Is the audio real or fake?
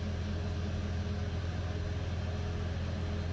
real